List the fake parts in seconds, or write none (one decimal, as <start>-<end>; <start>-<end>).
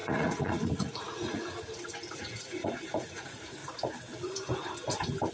0.0-1.5; 2.1-3.6